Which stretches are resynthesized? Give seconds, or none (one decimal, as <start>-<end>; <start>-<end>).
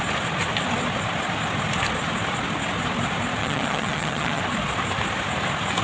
3.4-4.4